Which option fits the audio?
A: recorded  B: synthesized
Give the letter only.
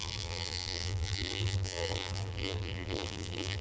B